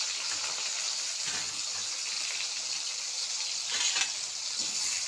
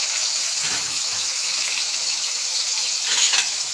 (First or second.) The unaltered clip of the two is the first